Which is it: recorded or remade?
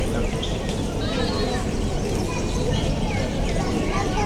remade